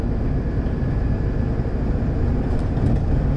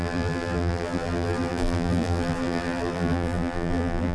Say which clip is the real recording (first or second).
first